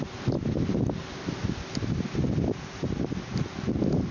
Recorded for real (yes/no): yes